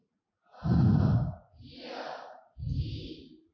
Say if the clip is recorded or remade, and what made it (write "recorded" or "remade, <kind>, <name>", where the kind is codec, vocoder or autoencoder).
recorded